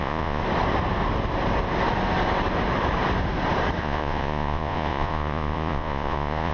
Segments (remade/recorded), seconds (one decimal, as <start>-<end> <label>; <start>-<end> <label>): 0.0-0.4 remade; 0.4-3.8 recorded; 3.8-6.5 remade